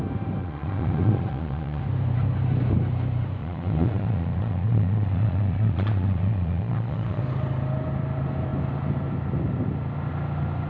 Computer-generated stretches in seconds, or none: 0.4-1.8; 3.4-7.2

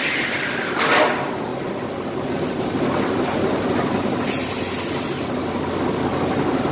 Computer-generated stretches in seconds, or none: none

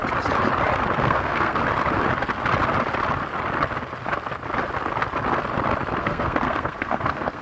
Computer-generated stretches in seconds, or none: 1.0-1.6; 6.0-7.4